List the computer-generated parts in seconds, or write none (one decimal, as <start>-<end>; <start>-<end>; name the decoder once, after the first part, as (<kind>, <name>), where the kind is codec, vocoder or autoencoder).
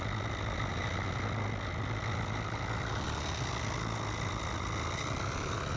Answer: none